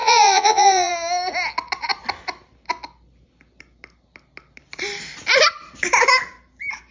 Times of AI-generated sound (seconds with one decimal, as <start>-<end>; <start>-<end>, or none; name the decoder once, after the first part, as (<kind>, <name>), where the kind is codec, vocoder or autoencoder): 0.0-0.9 (vocoder, Vocos)